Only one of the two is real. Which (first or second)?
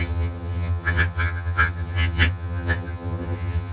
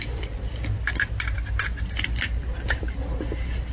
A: second